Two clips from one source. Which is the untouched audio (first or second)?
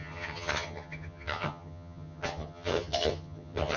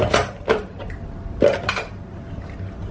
second